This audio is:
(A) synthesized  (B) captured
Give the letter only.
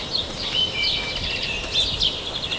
B